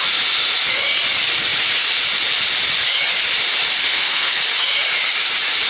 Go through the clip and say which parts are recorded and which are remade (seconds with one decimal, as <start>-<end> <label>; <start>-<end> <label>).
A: 0.0-3.8 recorded; 3.8-4.4 remade; 4.4-5.7 recorded